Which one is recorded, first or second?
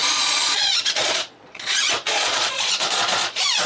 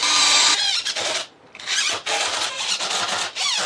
second